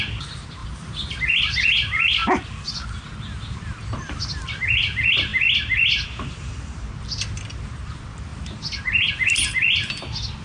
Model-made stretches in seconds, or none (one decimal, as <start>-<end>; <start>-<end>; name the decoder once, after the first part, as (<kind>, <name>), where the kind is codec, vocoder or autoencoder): 0.6-1.2 (vocoder, BigVGAN v2); 8.3-9.1